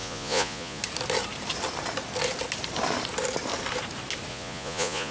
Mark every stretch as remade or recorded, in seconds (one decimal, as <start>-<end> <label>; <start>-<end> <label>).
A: 0.0-0.8 remade; 0.8-4.3 recorded; 4.3-5.1 remade